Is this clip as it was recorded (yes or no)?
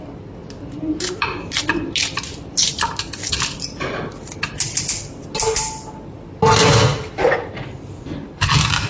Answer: yes